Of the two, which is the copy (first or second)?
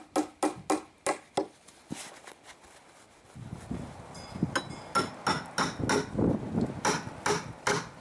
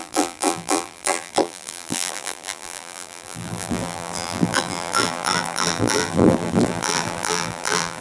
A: second